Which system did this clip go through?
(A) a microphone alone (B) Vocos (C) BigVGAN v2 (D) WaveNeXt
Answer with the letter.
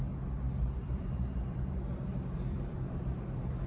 C